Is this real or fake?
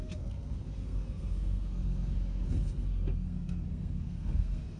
fake